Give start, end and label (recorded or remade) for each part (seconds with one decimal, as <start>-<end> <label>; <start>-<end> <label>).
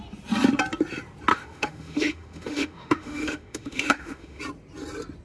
0.0-1.3 recorded; 1.3-4.4 remade; 4.4-5.2 recorded